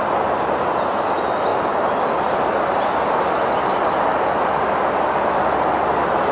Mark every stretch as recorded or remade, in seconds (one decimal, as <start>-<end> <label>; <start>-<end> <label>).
0.0-6.3 recorded